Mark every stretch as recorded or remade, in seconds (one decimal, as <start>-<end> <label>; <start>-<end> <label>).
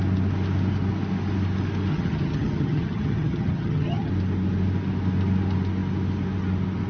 0.0-1.9 recorded; 1.9-4.1 remade; 4.1-6.9 recorded